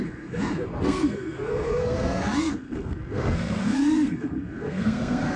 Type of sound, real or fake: fake